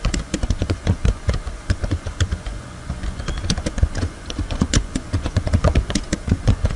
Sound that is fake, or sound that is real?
fake